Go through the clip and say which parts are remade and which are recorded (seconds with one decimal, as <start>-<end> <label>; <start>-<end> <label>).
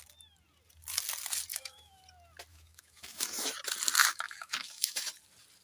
0.0-1.5 recorded; 1.5-2.0 remade; 2.0-2.5 recorded; 2.5-3.5 remade; 3.5-4.0 recorded; 4.0-5.1 remade; 5.1-5.6 recorded